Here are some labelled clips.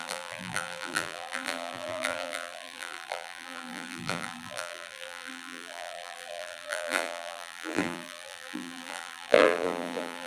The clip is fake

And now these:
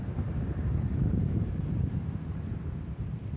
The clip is fake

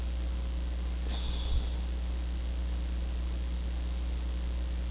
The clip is real